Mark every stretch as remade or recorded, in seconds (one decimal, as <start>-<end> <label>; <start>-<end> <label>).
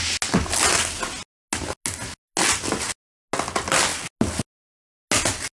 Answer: 0.0-5.6 recorded